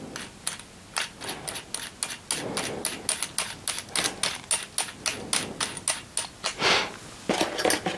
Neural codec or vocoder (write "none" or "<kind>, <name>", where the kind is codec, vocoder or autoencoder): none